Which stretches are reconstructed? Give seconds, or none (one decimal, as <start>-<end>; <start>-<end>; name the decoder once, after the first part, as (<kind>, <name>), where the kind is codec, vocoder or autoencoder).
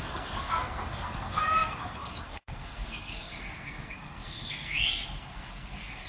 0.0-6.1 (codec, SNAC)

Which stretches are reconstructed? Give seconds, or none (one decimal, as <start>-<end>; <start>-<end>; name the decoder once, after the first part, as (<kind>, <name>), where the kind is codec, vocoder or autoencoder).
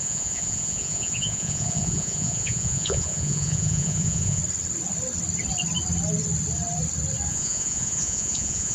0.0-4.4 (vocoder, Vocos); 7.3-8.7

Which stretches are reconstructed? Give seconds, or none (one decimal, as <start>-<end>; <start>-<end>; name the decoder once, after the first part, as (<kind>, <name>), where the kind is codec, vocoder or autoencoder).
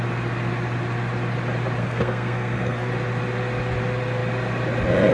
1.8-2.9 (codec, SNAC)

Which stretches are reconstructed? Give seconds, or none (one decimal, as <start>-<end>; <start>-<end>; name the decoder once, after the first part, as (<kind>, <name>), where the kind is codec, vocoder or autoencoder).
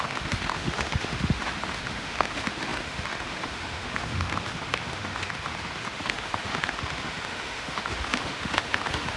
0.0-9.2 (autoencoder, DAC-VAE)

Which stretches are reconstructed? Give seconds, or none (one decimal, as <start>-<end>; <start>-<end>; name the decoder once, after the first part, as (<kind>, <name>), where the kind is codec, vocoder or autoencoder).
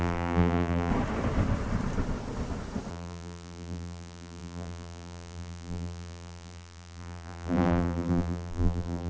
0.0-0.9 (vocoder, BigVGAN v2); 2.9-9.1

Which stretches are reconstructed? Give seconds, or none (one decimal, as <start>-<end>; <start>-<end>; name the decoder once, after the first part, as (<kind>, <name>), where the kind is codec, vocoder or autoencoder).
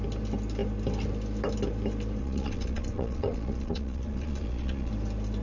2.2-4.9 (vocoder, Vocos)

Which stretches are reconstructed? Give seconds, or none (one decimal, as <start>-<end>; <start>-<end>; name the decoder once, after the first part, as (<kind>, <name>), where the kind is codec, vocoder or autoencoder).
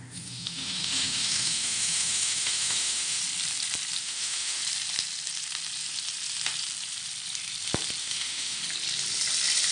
0.0-3.2 (autoencoder, DAC-VAE); 4.0-4.6; 8.0-8.6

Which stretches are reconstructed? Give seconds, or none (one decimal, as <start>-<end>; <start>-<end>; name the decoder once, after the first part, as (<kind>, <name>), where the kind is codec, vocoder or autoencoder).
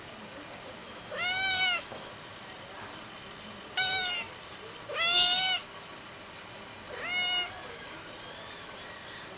0.8-2.1 (autoencoder, DAC-VAE)